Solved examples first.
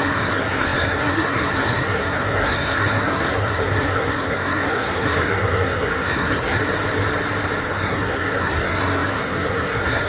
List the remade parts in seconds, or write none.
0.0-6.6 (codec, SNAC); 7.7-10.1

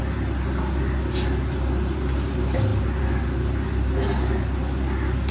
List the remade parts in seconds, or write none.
none

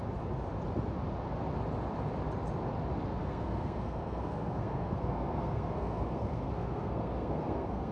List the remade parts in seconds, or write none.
3.2-7.9 (codec, SNAC)

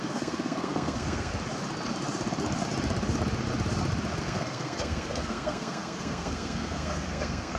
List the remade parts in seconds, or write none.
0.0-1.3 (codec, SNAC); 4.2-7.6

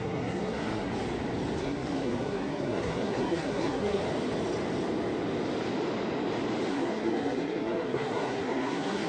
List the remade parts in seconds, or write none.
0.0-0.9 (codec, SNAC); 1.6-4.0; 6.7-9.1

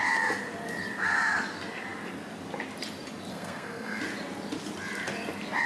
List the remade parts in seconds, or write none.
3.3-4.0 (codec, SNAC)